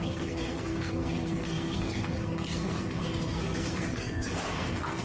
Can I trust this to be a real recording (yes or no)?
no